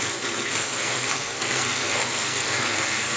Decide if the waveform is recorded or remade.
remade